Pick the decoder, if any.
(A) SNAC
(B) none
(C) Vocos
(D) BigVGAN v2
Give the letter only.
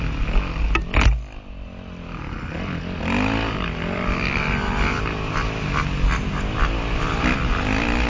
B